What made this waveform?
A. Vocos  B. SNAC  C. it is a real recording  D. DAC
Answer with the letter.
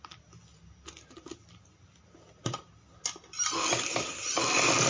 C